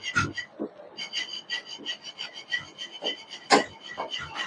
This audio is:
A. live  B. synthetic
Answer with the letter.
A